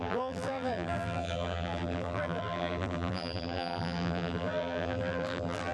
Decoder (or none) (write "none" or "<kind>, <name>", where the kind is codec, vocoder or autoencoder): vocoder, BigVGAN v2